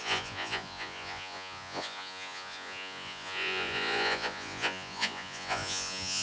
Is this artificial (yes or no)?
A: yes